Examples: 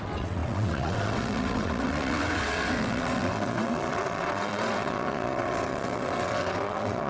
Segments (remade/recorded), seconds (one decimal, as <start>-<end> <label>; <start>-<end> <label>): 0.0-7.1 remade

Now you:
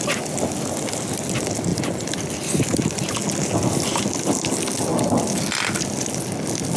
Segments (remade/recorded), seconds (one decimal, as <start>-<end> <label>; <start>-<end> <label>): 0.0-6.8 recorded

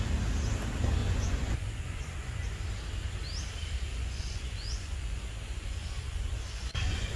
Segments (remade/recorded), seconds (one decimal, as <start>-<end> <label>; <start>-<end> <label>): 0.0-1.0 recorded; 1.0-2.5 remade; 2.5-3.9 recorded; 3.9-7.2 remade

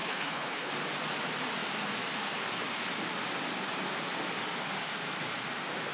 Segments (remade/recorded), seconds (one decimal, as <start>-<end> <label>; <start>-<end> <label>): 0.0-0.7 remade; 0.7-5.9 recorded